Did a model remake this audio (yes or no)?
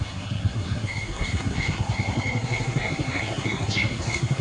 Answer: yes